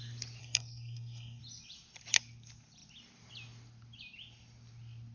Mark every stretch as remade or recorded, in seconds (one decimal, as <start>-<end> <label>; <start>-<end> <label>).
0.0-0.4 recorded; 0.4-1.4 remade; 1.4-5.1 recorded

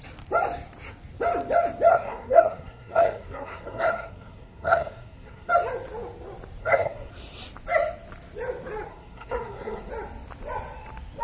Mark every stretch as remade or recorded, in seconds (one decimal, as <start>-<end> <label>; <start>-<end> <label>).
0.0-1.9 recorded; 1.9-5.5 remade; 5.5-6.6 recorded; 6.6-7.1 remade; 7.1-8.9 recorded; 8.9-9.9 remade; 9.9-11.2 recorded

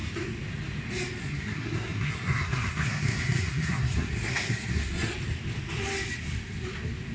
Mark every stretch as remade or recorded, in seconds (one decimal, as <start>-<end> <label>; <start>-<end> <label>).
0.0-1.2 recorded; 1.2-5.1 remade; 5.1-7.1 recorded

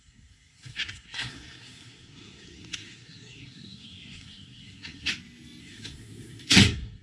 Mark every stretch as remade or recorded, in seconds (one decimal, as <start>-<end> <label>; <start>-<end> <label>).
0.0-5.1 remade; 5.1-5.6 recorded; 5.6-7.0 remade

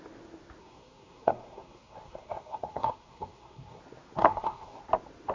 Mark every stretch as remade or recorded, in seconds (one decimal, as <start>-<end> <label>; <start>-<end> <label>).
0.0-0.6 recorded; 0.6-3.8 remade; 3.8-4.2 recorded; 4.2-4.8 remade; 4.8-5.3 recorded

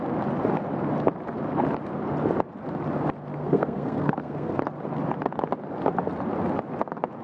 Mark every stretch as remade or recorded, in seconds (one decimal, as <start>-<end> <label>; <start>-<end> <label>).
0.0-3.3 recorded; 3.3-4.6 remade; 4.6-7.2 recorded

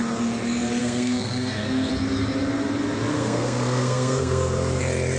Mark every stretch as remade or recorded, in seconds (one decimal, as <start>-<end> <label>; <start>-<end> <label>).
0.0-0.8 recorded; 0.8-1.9 remade; 1.9-3.1 recorded; 3.1-4.8 remade; 4.8-5.2 recorded